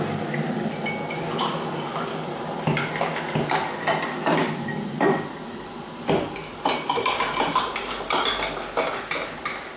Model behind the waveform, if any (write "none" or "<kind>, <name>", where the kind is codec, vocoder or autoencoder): none